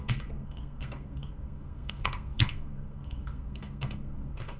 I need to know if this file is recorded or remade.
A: remade